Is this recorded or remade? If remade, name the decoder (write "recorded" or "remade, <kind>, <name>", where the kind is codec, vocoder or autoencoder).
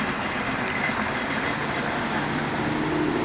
recorded